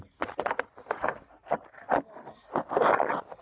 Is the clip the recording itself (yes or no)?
yes